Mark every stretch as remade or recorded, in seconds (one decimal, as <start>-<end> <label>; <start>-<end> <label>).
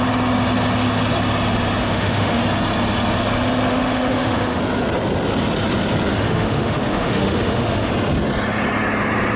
0.0-1.8 recorded; 1.8-2.4 remade; 2.4-3.7 recorded; 3.7-4.6 remade; 4.6-6.1 recorded; 6.1-7.9 remade; 7.9-9.4 recorded